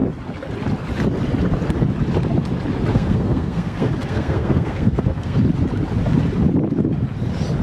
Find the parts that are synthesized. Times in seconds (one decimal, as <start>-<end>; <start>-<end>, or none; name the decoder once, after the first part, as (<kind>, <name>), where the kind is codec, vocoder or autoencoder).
2.9-5.4 (codec, SNAC)